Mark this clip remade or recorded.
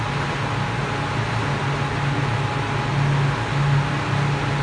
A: recorded